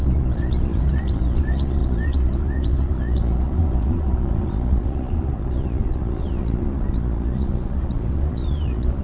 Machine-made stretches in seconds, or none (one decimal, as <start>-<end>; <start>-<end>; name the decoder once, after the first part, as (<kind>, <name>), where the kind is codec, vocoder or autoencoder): 0.0-9.0 (vocoder, Vocos)